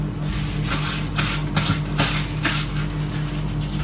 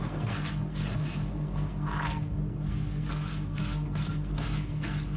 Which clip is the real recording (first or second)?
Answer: first